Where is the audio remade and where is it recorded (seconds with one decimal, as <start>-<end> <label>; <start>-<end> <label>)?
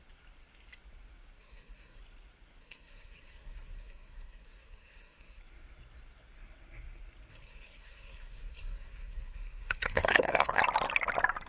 0.0-1.4 recorded; 1.4-2.0 remade; 2.0-2.6 recorded; 2.6-5.4 remade; 5.4-7.3 recorded; 7.3-10.6 remade; 10.6-11.5 recorded